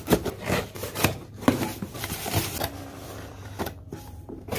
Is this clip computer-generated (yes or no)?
yes